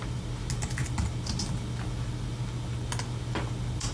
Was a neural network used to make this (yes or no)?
no